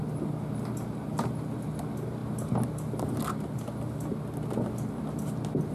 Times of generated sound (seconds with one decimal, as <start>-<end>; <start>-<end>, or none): none